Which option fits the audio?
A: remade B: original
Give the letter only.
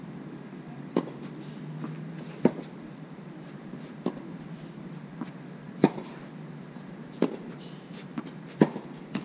B